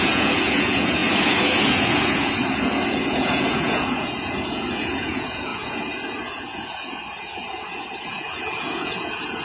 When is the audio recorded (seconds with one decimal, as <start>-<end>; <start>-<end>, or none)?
none